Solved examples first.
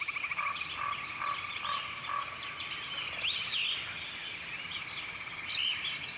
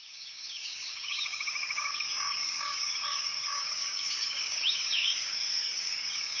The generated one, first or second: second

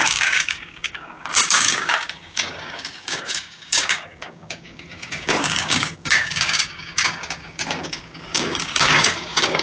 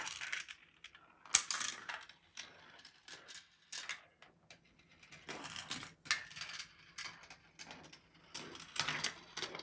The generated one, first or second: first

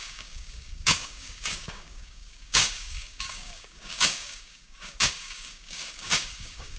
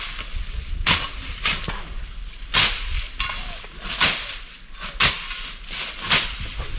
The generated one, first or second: first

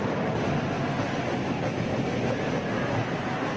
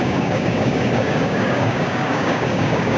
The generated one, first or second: second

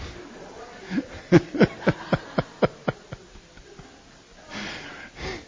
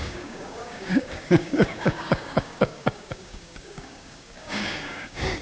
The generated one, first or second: second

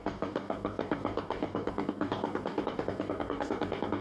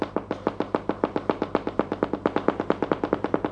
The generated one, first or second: first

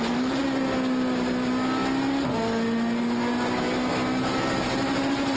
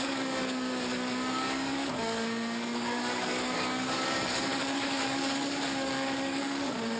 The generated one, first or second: second